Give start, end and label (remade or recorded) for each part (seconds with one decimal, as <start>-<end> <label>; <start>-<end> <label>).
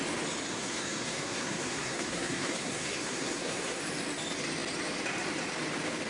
0.0-0.5 recorded; 0.5-3.8 remade; 3.8-6.1 recorded